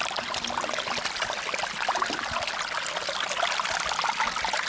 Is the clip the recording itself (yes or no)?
yes